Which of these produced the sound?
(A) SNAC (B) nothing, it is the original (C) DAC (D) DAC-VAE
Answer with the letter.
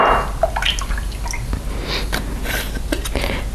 B